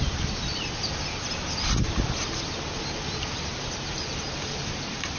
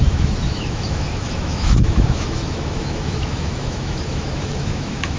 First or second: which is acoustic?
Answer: first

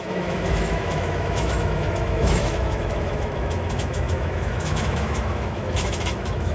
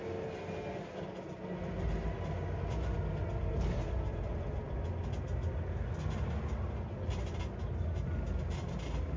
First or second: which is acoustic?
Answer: second